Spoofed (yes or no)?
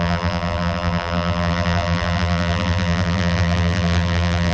yes